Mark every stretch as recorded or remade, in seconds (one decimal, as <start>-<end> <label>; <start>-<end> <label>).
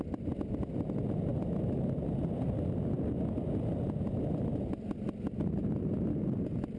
0.0-6.8 recorded